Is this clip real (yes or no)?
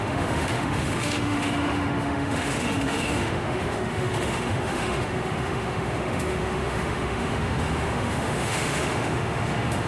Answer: no